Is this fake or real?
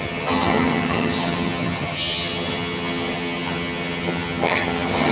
fake